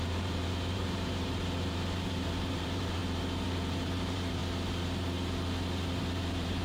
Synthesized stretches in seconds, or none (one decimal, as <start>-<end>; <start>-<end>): 0.0-3.0; 3.5-4.4; 6.0-6.6